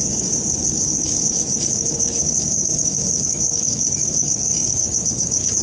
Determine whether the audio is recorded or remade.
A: remade